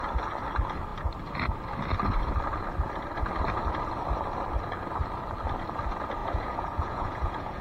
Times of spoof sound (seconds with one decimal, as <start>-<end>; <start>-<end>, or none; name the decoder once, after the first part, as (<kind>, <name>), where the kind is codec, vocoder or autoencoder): 6.2-7.6 (vocoder, Vocos)

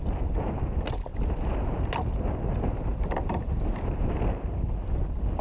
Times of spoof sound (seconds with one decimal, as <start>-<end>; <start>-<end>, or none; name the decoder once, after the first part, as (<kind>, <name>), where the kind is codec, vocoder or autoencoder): 1.1-1.7 (vocoder, BigVGAN v2); 2.9-4.5